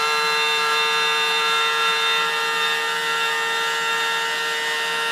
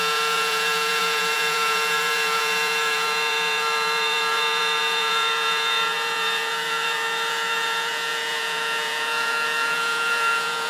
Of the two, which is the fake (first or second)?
second